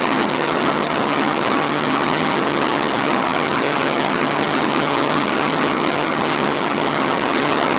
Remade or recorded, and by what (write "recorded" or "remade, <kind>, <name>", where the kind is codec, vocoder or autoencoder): remade, vocoder, HiFi-GAN